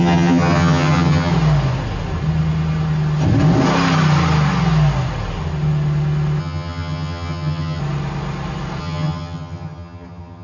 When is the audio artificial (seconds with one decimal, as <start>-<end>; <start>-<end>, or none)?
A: 0.0-1.3; 6.4-7.8; 8.8-10.4